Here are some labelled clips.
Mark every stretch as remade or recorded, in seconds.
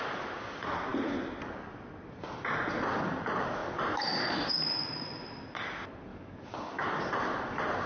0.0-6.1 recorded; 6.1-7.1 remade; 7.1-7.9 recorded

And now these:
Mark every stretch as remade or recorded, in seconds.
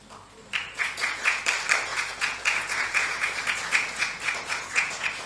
0.0-0.6 recorded; 0.6-1.4 remade; 1.4-1.9 recorded; 1.9-5.3 remade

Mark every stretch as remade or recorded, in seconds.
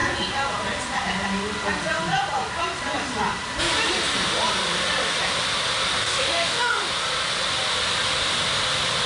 0.0-6.0 recorded; 6.0-6.9 remade; 6.9-9.1 recorded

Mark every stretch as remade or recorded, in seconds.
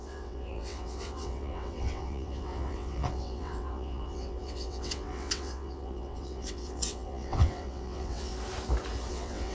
0.0-8.3 remade; 8.3-9.1 recorded; 9.1-9.5 remade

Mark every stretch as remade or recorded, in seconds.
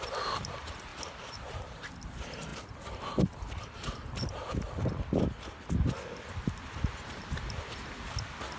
0.0-8.6 recorded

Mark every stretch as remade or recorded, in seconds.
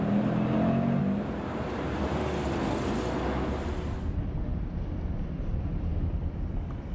0.0-6.9 recorded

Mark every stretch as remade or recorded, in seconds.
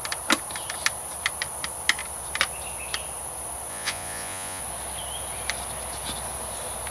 0.0-3.7 recorded; 3.7-4.6 remade; 4.6-6.9 recorded